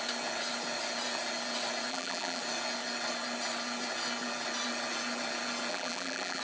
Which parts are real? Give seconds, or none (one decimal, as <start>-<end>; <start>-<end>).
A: 0.0-1.9; 2.4-5.7